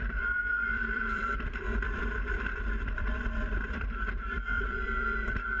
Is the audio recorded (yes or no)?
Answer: no